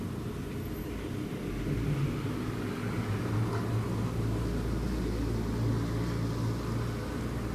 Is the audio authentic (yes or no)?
yes